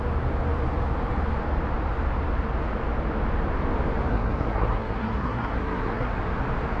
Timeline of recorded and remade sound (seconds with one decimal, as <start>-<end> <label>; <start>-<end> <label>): 0.0-4.1 recorded; 4.1-6.2 remade; 6.2-6.8 recorded